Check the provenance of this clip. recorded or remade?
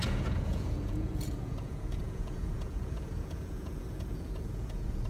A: remade